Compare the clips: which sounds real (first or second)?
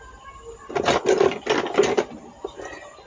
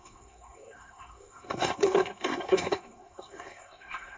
first